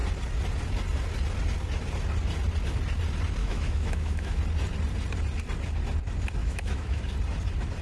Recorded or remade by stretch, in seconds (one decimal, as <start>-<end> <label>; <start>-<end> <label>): 0.0-3.4 recorded; 3.4-4.4 remade; 4.4-6.4 recorded; 6.4-7.0 remade; 7.0-7.8 recorded